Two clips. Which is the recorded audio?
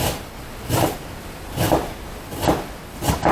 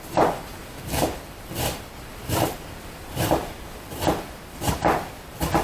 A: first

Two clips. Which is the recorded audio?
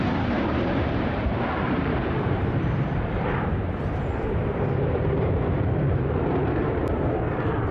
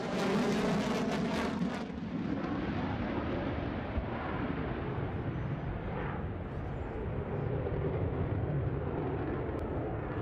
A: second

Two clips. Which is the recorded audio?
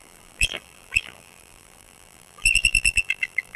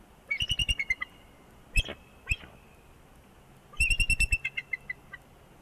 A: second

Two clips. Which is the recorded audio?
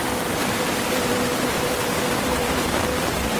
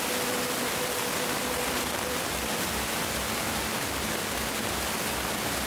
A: second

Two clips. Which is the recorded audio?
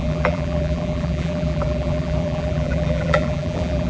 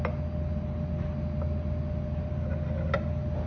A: second